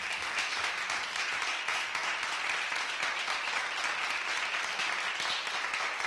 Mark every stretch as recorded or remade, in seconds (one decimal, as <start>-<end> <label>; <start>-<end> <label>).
0.0-6.1 recorded